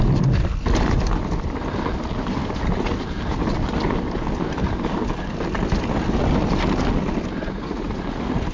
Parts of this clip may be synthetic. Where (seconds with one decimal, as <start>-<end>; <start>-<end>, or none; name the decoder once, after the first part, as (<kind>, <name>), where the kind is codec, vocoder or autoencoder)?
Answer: 7.4-7.9 (vocoder, Vocos)